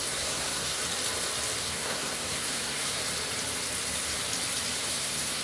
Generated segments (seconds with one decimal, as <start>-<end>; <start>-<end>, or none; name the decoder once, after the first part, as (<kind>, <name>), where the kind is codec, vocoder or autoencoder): 0.0-0.8 (codec, SNAC); 1.6-3.0; 4.9-5.4